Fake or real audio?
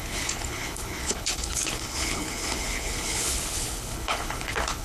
fake